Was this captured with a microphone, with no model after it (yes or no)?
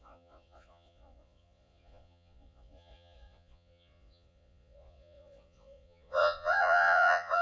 no